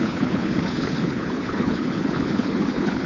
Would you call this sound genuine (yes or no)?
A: no